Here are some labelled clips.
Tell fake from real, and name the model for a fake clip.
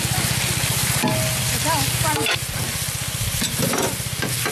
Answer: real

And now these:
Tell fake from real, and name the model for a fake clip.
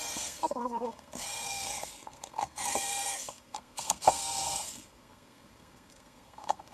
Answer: fake, codec, SNAC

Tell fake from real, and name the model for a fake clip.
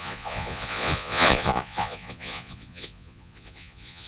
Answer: fake, vocoder, Vocos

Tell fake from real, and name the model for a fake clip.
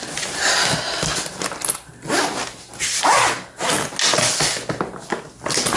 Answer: real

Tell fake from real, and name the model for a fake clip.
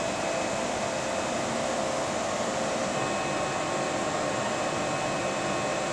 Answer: real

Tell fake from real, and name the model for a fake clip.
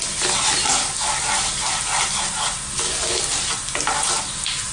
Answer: real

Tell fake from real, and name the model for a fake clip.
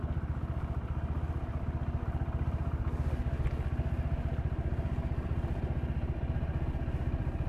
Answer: real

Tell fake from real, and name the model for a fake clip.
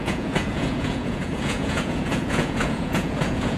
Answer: fake, vocoder, Vocos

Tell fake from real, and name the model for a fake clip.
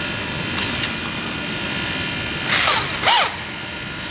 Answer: real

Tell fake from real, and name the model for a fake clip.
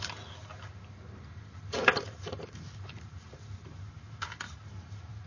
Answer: fake, vocoder, BigVGAN v2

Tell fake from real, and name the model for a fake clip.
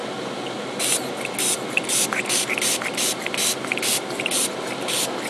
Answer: real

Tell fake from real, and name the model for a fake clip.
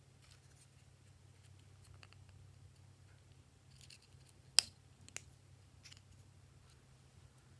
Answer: real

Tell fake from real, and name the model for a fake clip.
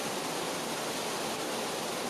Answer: real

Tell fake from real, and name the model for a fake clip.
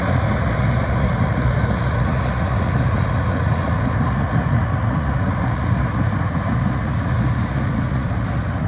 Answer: fake, vocoder, Vocos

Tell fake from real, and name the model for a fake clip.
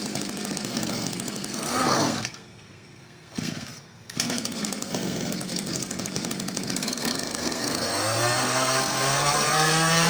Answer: fake, codec, SNAC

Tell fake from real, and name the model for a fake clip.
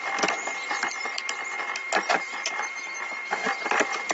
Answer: fake, vocoder, BigVGAN v2